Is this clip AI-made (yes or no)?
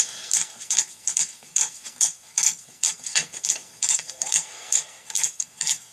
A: yes